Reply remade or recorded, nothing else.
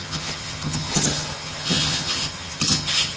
remade